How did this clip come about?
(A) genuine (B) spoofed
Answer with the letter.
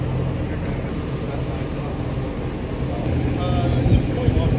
A